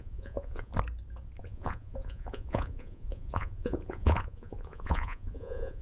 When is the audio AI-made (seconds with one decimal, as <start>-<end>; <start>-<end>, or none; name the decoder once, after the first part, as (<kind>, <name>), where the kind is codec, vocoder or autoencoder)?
0.0-0.7 (vocoder, Vocos); 1.4-5.8